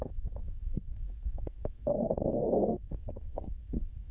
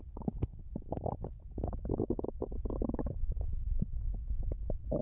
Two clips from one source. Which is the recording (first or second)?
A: second